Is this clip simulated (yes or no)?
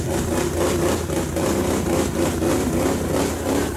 no